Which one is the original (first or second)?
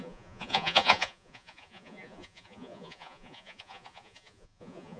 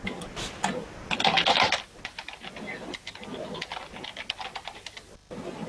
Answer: second